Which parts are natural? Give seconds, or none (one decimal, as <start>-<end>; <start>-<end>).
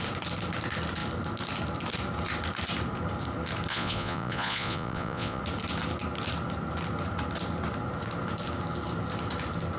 0.0-3.7; 5.4-9.8